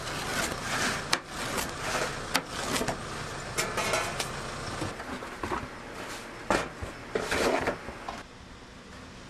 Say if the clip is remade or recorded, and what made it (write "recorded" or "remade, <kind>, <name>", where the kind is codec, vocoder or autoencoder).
recorded